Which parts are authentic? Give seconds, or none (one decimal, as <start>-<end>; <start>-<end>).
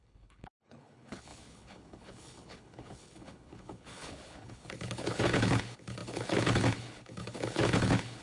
none